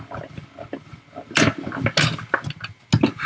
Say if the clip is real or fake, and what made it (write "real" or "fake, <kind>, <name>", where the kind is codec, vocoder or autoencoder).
real